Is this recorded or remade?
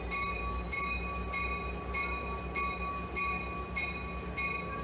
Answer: recorded